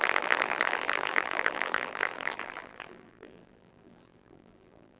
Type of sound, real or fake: fake